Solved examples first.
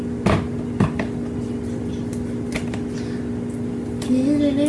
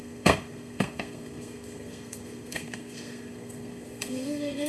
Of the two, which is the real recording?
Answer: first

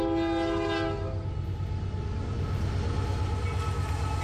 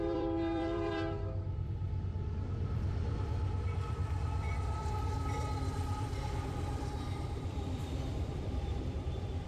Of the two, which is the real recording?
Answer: first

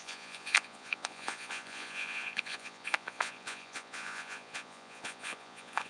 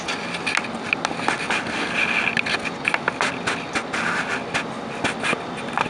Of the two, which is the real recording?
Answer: second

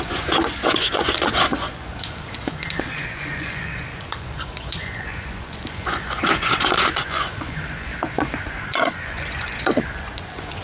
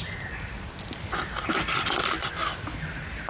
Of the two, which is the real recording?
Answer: second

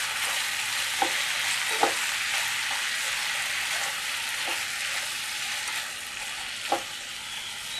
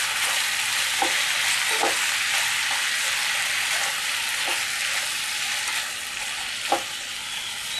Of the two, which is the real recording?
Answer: first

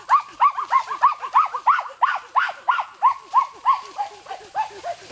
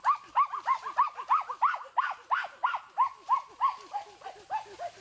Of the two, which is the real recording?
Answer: second